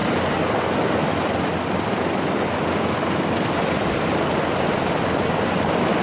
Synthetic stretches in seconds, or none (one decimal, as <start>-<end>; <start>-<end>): none